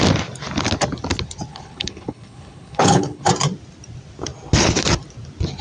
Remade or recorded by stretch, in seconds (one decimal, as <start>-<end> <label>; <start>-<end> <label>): 0.0-1.5 recorded; 1.5-3.3 remade; 3.3-5.6 recorded